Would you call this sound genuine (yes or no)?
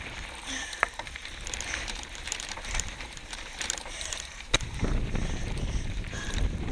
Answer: no